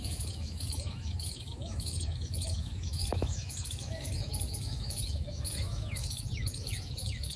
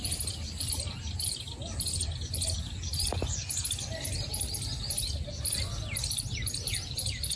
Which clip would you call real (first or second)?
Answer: second